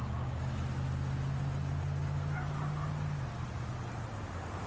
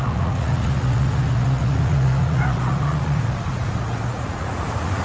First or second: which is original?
first